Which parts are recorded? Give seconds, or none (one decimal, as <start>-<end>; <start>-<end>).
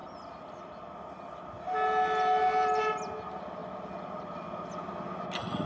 0.0-5.7